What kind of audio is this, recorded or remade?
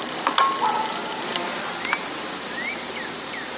recorded